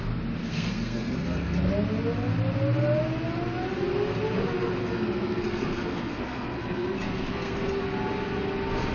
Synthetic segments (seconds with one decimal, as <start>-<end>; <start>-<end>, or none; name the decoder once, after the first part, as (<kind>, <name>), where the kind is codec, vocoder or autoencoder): 0.4-1.7 (codec, SNAC); 4.8-7.8